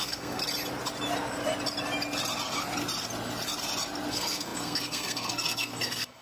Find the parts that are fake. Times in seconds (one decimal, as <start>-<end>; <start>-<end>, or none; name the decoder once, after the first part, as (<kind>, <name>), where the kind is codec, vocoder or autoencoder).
0.0-0.4 (codec, SNAC); 4.1-6.2